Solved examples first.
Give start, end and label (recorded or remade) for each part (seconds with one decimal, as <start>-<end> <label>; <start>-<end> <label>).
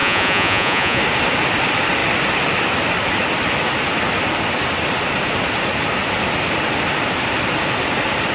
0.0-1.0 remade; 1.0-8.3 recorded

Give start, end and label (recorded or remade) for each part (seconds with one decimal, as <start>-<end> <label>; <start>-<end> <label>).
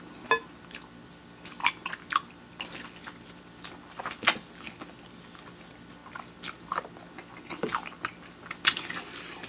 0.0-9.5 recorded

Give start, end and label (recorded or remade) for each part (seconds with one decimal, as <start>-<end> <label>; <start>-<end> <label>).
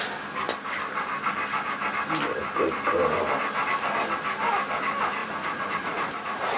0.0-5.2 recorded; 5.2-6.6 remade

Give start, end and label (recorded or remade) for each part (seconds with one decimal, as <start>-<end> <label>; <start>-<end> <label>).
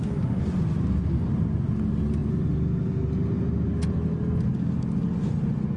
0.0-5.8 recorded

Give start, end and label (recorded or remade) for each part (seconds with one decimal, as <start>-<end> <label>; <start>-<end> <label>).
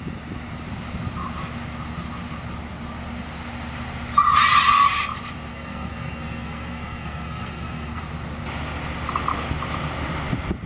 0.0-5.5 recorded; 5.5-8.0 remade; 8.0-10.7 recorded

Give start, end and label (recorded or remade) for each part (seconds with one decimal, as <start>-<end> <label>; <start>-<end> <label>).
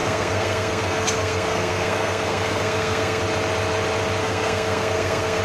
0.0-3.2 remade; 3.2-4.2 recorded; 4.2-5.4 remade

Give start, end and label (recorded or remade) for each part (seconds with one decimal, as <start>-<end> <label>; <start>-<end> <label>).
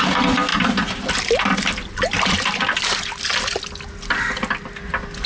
0.0-5.3 recorded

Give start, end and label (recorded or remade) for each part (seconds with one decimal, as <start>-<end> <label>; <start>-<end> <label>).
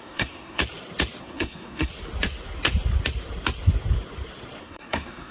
0.0-0.6 remade; 0.6-1.2 recorded; 1.2-1.9 remade; 1.9-4.6 recorded; 4.6-5.3 remade